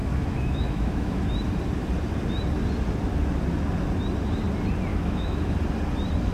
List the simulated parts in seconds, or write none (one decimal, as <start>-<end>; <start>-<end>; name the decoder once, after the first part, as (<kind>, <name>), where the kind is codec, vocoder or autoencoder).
0.0-1.2 (autoencoder, DAC-VAE); 4.9-5.5